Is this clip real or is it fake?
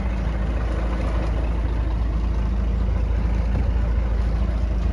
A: real